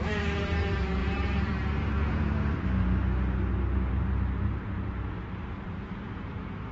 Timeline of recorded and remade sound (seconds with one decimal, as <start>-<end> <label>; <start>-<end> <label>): 0.0-1.0 recorded; 1.0-5.0 remade; 5.0-5.5 recorded; 5.5-6.7 remade